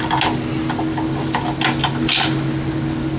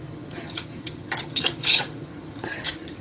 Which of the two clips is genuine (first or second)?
first